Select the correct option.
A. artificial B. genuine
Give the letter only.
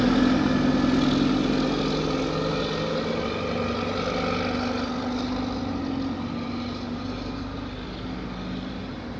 B